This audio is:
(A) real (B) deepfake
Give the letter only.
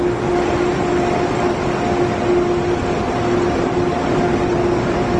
A